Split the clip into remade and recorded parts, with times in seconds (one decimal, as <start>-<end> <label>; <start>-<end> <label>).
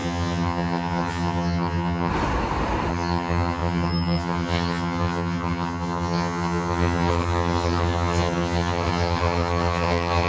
0.0-2.1 remade; 2.1-2.9 recorded; 2.9-10.3 remade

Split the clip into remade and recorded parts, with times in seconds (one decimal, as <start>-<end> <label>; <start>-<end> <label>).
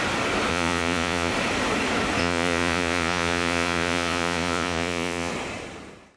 0.0-0.5 recorded; 0.5-1.3 remade; 1.3-2.2 recorded; 2.2-5.3 remade; 5.3-6.2 recorded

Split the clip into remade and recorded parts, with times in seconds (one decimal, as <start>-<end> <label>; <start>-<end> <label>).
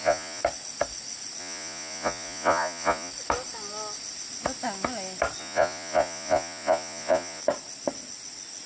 0.0-0.4 remade; 0.4-1.4 recorded; 1.4-3.1 remade; 3.1-5.4 recorded; 5.4-7.4 remade; 7.4-8.7 recorded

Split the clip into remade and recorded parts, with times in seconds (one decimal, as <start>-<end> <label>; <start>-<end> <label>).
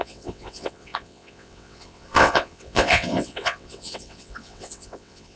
0.0-5.4 remade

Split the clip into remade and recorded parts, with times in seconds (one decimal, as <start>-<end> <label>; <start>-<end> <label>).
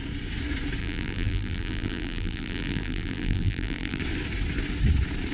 0.0-0.8 recorded; 0.8-4.0 remade; 4.0-5.3 recorded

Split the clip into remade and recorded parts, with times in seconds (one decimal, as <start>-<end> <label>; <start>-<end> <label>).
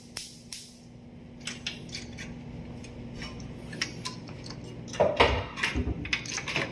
0.0-6.7 recorded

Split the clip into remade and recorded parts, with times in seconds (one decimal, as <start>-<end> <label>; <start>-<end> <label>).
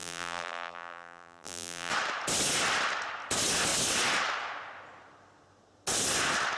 0.0-1.9 remade; 1.9-6.6 recorded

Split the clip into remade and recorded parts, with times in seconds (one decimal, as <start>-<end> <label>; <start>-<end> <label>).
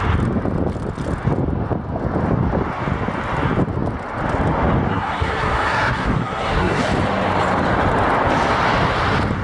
0.0-4.9 recorded; 4.9-6.8 remade; 6.8-9.4 recorded